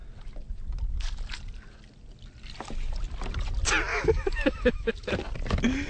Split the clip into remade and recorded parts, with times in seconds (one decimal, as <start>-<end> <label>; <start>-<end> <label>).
0.0-3.9 recorded; 3.9-4.9 remade; 4.9-5.9 recorded